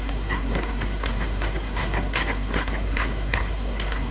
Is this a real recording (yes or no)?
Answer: no